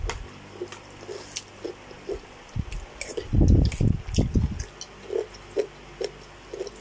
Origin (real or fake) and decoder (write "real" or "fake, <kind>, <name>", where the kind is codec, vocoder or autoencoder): real